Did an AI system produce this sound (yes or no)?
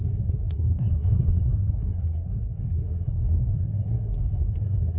yes